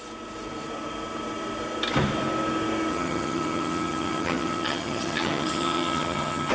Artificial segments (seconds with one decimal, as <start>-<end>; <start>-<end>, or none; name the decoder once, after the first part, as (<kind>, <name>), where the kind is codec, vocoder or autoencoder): 2.9-6.5 (vocoder, HiFi-GAN)